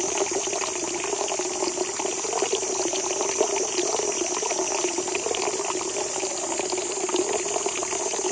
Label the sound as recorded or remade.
recorded